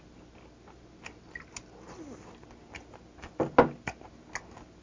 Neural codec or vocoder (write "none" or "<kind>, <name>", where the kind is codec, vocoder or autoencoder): none